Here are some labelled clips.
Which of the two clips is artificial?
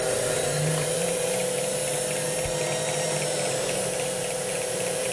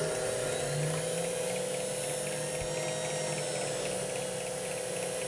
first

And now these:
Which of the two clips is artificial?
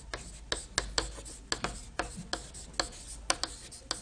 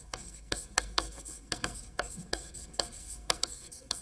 second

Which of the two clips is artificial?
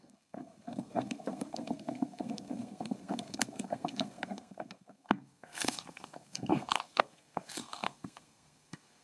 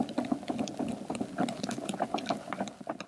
first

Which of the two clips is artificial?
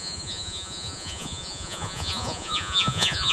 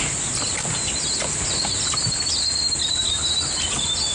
first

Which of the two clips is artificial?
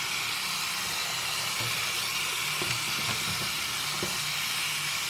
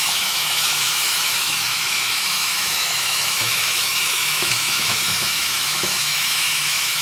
second